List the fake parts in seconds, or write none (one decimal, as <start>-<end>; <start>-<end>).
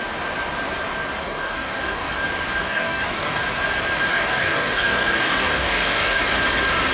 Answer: 1.2-2.1; 2.6-3.4; 4.1-6.2